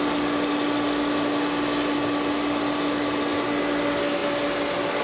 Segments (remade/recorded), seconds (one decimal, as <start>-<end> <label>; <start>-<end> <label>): 0.0-5.0 recorded